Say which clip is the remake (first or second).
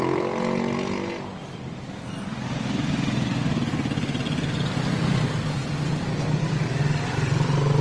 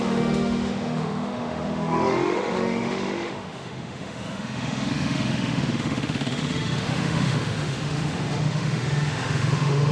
second